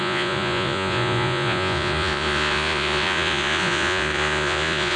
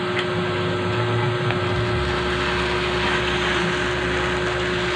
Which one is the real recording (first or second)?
second